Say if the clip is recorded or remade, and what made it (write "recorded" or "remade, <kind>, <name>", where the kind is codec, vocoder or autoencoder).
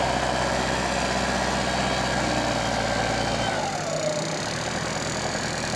recorded